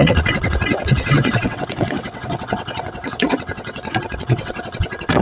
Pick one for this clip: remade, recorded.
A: remade